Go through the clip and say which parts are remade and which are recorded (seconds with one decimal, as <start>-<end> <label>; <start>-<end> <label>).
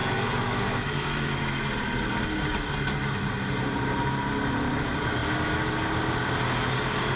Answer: 0.0-1.6 remade; 1.6-7.2 recorded